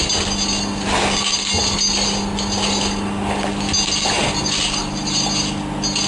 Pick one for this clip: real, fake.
real